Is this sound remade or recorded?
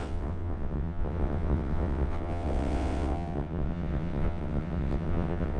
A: remade